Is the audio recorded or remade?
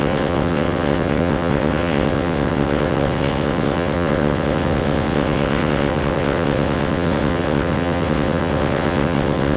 remade